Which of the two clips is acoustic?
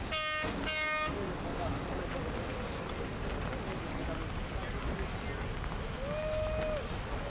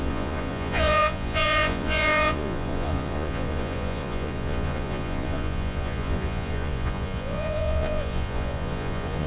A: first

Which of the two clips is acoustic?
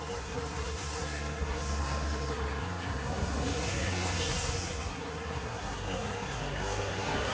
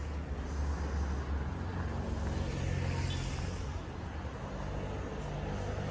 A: second